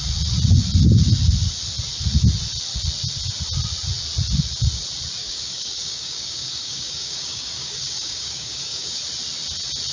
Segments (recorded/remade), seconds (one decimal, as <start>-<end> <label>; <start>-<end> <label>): 0.0-5.2 recorded; 5.2-9.0 remade; 9.0-9.9 recorded